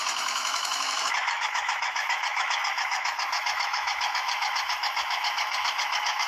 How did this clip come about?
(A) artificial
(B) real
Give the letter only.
A